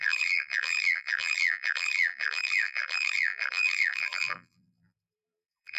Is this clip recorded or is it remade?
remade